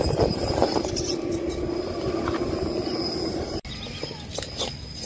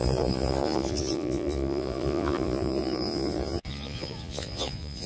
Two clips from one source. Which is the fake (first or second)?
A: second